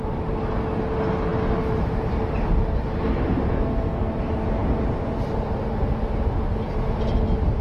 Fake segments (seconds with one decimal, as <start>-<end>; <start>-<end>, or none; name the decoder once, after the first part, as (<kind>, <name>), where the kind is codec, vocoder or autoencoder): 3.5-4.1 (codec, SNAC)